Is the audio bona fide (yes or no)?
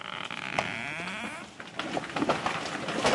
yes